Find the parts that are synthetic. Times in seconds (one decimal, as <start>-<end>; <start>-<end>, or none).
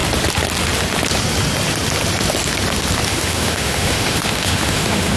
3.1-5.2